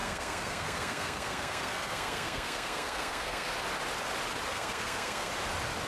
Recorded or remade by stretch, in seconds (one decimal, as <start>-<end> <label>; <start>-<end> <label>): 0.0-3.5 remade; 3.5-4.5 recorded; 4.5-5.3 remade; 5.3-5.9 recorded